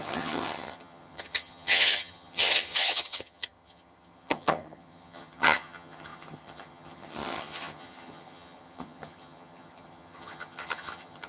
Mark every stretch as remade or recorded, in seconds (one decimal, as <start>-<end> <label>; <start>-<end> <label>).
0.0-11.3 remade